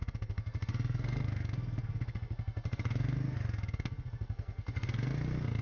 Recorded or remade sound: remade